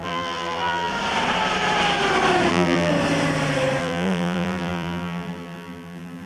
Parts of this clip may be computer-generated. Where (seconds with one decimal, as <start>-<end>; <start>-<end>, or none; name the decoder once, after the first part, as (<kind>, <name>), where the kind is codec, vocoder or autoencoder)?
0.0-0.9 (vocoder, BigVGAN v2); 2.5-2.9; 3.8-6.3